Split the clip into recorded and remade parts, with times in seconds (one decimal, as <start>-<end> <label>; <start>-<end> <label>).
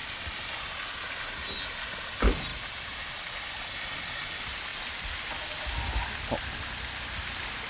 0.0-1.9 recorded; 1.9-4.7 remade; 4.7-6.6 recorded; 6.6-7.7 remade